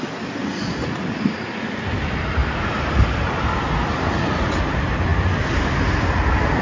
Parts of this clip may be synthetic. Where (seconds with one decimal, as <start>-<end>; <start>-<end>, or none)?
none